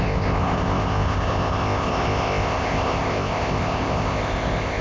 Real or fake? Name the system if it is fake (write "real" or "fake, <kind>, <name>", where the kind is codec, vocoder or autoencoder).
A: fake, codec, ZipCodec